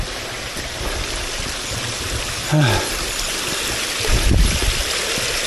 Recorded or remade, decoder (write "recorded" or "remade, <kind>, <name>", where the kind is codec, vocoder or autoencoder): recorded